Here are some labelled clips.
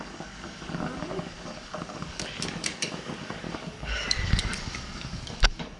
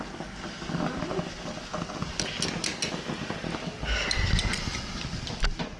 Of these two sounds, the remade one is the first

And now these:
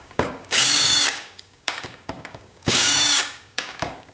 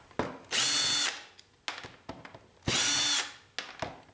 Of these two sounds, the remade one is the first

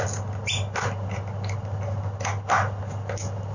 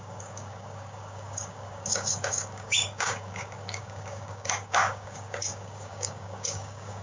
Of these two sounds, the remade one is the second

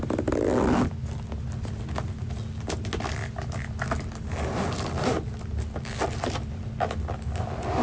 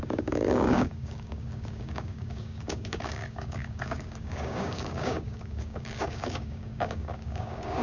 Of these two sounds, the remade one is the second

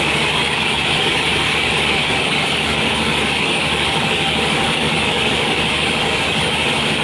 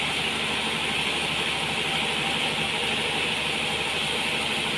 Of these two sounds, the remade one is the first